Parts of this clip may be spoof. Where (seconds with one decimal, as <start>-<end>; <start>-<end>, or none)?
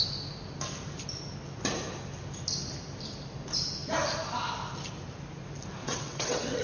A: 5.8-6.6